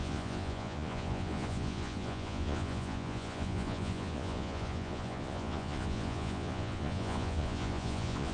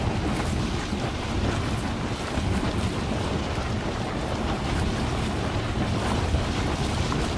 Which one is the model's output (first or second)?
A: first